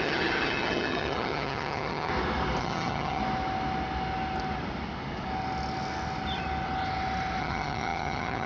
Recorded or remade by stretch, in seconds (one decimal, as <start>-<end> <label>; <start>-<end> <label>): 0.0-2.1 remade; 2.1-2.6 recorded; 2.6-3.2 remade; 3.2-7.4 recorded; 7.4-8.5 remade